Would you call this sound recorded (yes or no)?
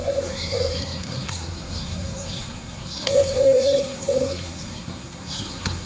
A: no